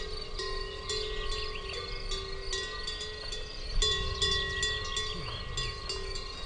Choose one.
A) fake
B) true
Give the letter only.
B